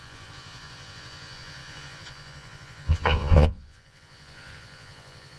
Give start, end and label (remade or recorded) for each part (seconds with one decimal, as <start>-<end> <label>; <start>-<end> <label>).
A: 0.0-5.4 remade